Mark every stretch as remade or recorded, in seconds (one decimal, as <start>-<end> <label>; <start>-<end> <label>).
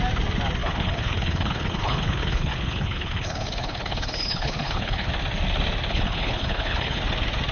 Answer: 0.0-0.6 recorded; 0.6-5.1 remade; 5.1-5.9 recorded; 5.9-7.0 remade; 7.0-7.5 recorded